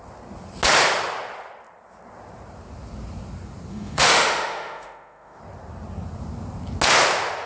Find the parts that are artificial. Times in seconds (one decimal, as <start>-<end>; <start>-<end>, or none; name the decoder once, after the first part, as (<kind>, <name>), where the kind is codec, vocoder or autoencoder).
3.7-5.4 (autoencoder, DAC-VAE)